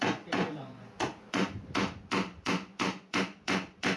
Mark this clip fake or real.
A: fake